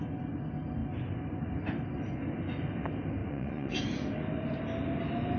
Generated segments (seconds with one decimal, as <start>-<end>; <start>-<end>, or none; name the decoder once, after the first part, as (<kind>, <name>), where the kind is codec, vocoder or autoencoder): 3.2-3.8 (vocoder, Vocos)